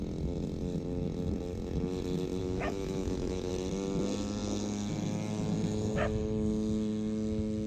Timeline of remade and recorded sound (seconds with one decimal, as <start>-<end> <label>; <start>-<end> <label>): 0.0-2.4 recorded; 2.4-3.5 remade; 3.5-7.7 recorded